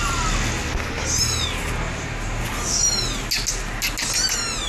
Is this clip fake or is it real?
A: real